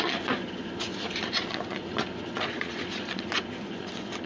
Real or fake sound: fake